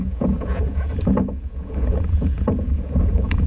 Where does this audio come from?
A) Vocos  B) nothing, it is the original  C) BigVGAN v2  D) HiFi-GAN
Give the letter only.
A